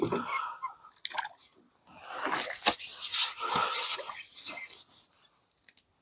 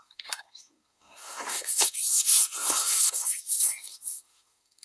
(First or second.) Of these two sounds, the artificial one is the second